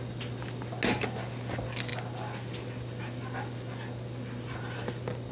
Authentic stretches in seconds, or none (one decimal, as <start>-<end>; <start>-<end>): 0.0-5.3